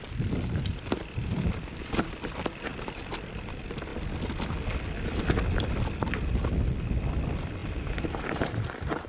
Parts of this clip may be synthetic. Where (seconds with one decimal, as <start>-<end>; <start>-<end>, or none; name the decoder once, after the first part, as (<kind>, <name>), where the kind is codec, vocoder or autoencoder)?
0.0-2.7 (vocoder, BigVGAN v2); 3.2-3.9; 6.6-9.1